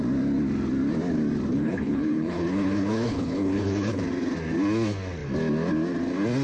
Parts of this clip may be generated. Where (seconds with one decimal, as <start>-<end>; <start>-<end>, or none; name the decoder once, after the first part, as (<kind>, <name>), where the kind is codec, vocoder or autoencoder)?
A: 1.5-4.0 (codec, HILCodec)